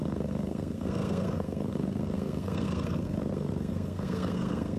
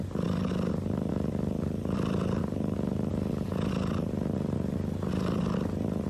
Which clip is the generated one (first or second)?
first